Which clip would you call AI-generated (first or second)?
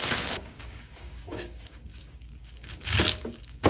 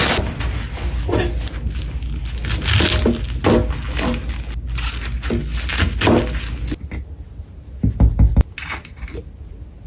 first